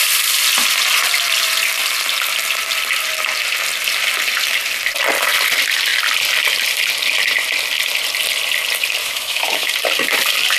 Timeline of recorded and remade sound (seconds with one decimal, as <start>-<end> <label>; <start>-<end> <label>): 0.0-9.0 recorded; 9.0-9.7 remade; 9.7-10.6 recorded